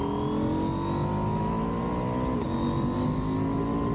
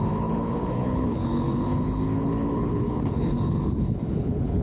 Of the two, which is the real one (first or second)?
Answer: first